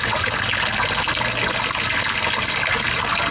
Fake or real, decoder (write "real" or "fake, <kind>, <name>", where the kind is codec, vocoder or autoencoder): real